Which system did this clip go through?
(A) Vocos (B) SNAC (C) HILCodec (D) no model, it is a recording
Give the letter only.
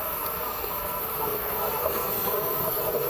B